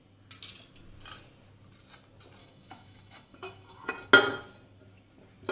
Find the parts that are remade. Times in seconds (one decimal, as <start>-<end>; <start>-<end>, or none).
2.4-3.9